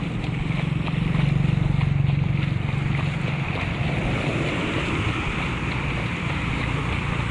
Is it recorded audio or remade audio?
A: recorded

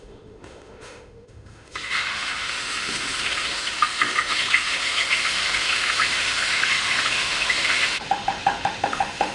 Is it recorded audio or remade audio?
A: remade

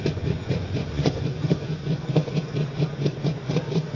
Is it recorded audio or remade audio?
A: remade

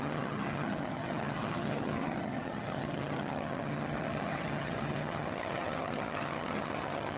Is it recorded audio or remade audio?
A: remade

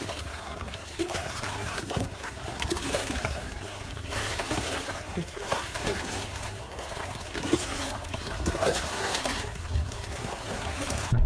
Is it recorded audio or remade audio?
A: remade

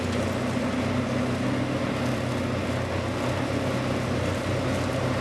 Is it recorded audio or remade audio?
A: recorded